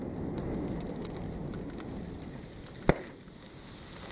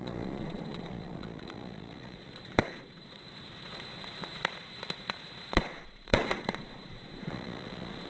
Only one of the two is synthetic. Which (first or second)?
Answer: second